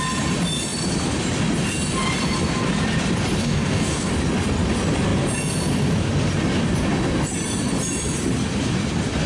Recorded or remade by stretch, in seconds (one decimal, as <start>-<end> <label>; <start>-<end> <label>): 0.0-3.4 recorded; 3.4-4.1 remade; 4.1-9.3 recorded